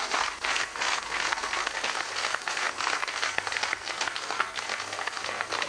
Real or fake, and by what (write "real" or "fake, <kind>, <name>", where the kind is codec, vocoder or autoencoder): fake, codec, SNAC